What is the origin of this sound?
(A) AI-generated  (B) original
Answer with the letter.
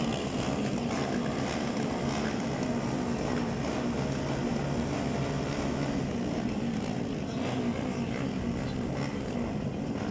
B